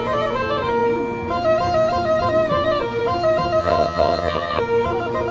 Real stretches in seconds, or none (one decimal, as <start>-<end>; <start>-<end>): 0.0-3.6; 4.6-5.3